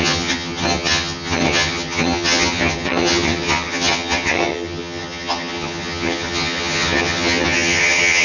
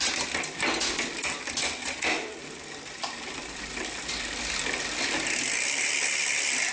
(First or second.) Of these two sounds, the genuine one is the second